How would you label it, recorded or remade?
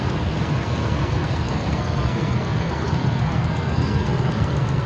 remade